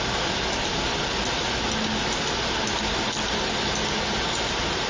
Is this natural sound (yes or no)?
yes